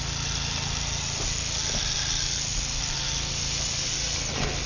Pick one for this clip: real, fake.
real